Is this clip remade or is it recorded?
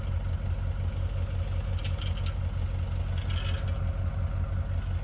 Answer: recorded